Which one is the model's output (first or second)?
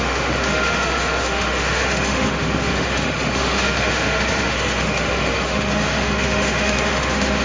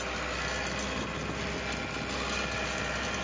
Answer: first